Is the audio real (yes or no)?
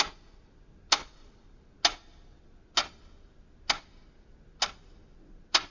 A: yes